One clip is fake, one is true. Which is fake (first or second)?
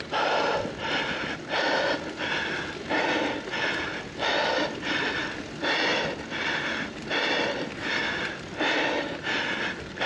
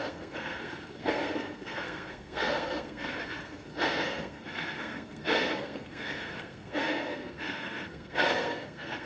second